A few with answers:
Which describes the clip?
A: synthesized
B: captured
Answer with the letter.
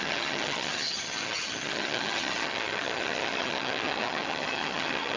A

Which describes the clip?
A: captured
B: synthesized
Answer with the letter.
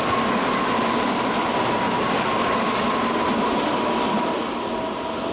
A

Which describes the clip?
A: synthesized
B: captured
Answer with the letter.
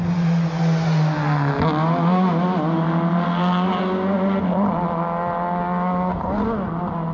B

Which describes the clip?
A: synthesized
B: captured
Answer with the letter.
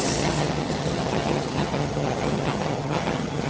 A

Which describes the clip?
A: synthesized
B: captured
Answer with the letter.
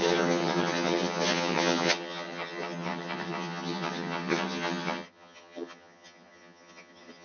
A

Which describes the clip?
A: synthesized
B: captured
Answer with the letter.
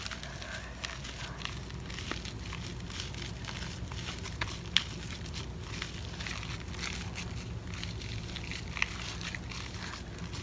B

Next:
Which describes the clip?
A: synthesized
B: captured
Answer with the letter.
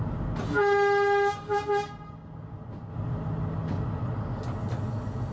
B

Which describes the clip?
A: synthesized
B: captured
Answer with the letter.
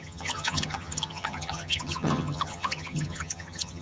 A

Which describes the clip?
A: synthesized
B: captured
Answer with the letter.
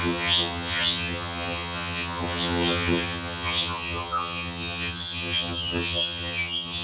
A